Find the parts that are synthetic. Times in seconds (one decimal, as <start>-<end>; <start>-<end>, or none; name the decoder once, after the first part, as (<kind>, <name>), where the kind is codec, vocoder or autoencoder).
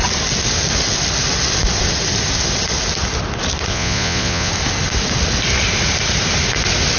3.7-4.5 (vocoder, Vocos)